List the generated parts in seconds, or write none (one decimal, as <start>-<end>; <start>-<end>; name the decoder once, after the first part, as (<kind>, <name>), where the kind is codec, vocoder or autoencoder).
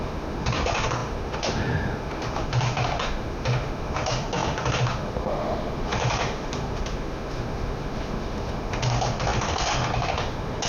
0.0-10.7 (autoencoder, DAC-VAE)